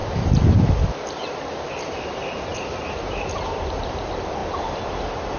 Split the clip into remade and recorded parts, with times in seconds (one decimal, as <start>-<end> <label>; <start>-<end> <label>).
0.0-1.9 remade; 1.9-2.5 recorded; 2.5-4.0 remade; 4.0-5.4 recorded